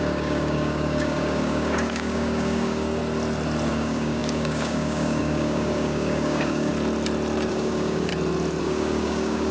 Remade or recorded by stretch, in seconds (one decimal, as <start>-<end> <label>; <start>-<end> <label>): 0.0-3.0 remade; 3.0-3.7 recorded; 3.7-6.7 remade; 6.7-7.5 recorded; 7.5-8.1 remade; 8.1-8.6 recorded; 8.6-9.5 remade